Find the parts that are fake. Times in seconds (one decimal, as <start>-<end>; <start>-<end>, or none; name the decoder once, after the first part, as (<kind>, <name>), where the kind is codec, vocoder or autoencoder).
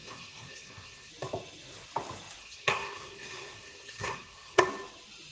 0.0-1.1 (codec, SNAC); 2.4-4.6